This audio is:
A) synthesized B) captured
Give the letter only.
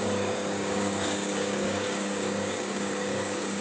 A